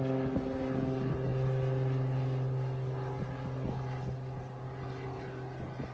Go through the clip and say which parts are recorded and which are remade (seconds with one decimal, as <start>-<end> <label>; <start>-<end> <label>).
0.0-5.9 recorded